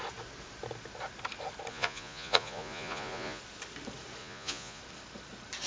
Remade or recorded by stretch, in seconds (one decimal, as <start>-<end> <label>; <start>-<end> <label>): 0.0-1.7 recorded; 1.7-3.4 remade; 3.4-4.2 recorded; 4.2-4.8 remade; 4.8-5.7 recorded